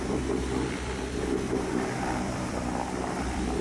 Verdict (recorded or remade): remade